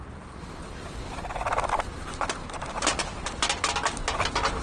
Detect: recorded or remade recorded